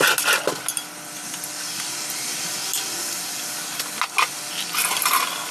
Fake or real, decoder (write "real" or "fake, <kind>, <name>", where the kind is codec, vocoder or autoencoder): real